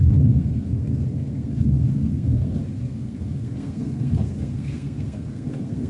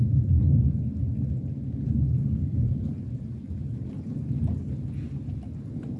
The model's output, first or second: first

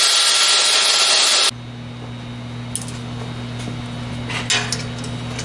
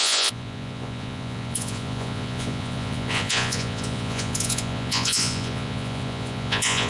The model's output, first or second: second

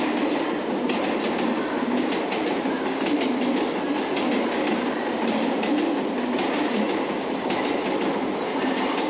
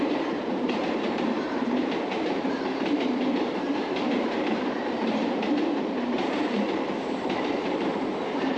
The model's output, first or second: second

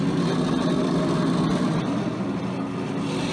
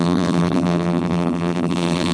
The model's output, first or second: second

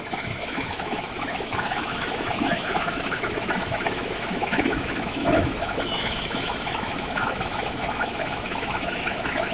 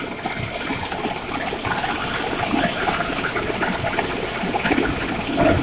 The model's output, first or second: first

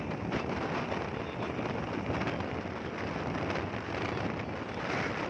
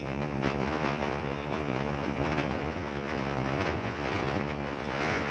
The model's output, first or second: second